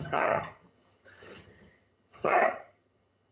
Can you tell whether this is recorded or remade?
remade